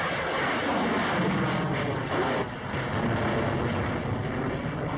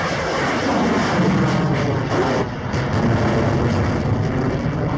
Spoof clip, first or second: first